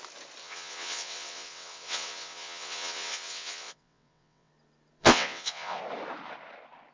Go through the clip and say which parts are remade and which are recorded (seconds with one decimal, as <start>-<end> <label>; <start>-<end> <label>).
0.0-0.4 recorded; 0.4-4.5 remade; 4.5-5.0 recorded; 5.0-5.8 remade; 5.8-6.9 recorded